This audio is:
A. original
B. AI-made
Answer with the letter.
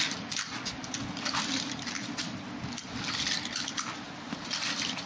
A